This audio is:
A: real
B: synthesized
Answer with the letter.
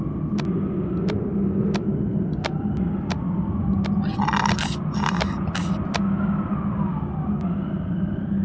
A